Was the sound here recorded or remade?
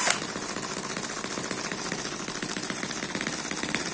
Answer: recorded